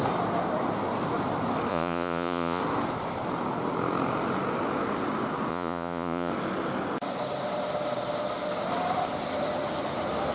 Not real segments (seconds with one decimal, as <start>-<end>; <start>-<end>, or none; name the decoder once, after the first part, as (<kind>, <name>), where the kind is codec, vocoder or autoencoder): 1.7-2.6 (vocoder, Vocos); 5.5-6.3

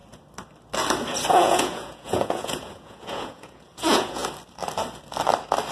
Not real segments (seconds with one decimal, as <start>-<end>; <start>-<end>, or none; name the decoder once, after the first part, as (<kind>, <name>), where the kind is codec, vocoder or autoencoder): 1.3-4.2 (vocoder, Vocos)

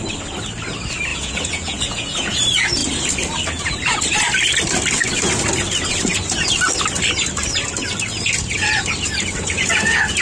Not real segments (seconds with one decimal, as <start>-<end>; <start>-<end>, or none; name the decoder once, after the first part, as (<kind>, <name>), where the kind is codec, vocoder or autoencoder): 1.1-2.4 (vocoder, Vocos)

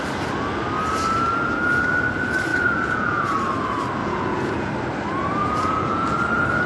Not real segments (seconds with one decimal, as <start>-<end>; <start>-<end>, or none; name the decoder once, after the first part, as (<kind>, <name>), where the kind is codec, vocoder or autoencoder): 2.5-3.3 (vocoder, Vocos); 4.0-4.7; 5.4-6.1

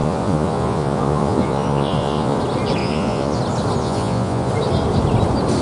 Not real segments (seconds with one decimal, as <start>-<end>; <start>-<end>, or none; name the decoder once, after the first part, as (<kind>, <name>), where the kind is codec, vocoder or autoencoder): 0.0-2.4 (vocoder, Vocos); 2.8-3.4; 3.8-4.5